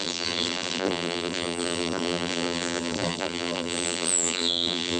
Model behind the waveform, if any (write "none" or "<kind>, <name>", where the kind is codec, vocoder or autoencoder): vocoder, BigVGAN v2